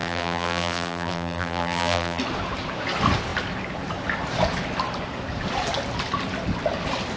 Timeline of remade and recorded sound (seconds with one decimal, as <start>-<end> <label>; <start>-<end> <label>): 0.0-2.2 remade; 2.2-7.2 recorded